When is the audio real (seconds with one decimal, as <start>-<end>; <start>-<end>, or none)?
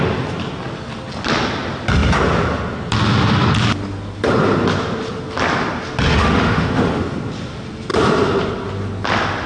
0.0-6.1; 7.0-9.5